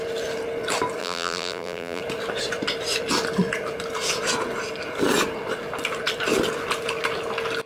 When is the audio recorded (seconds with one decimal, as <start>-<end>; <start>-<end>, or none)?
0.0-1.0; 2.0-7.7